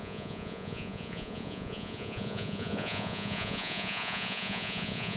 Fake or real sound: fake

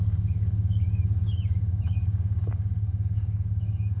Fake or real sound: fake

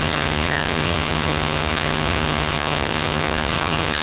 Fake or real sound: fake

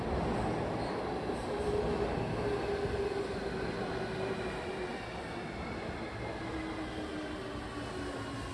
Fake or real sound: real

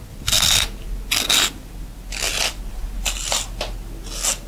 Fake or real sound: real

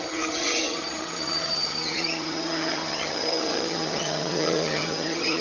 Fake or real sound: fake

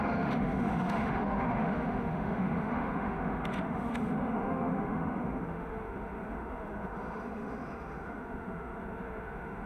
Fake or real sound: fake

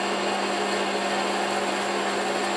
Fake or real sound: real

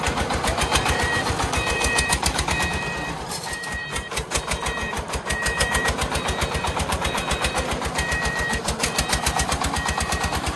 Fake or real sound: fake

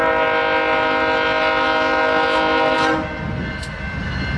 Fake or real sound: real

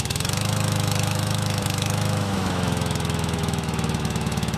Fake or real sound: fake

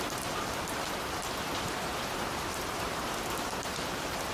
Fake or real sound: real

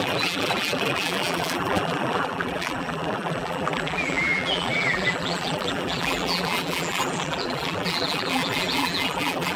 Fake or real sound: fake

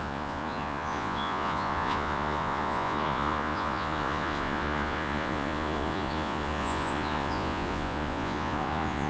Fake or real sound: fake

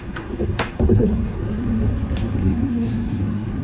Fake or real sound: fake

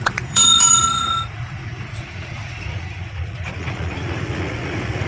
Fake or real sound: fake